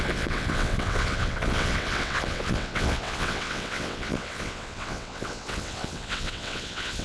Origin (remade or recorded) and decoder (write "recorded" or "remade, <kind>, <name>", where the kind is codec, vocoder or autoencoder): remade, vocoder, WaveNeXt